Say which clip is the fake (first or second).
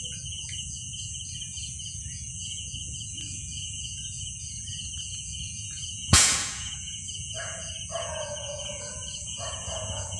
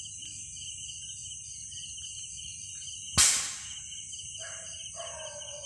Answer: first